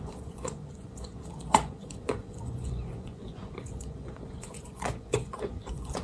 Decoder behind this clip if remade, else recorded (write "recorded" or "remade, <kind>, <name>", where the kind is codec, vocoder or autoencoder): remade, vocoder, Vocos